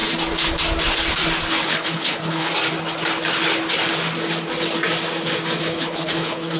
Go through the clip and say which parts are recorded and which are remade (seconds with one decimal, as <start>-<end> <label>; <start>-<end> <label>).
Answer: 0.0-1.7 recorded; 1.7-2.5 remade; 2.5-5.6 recorded; 5.6-6.6 remade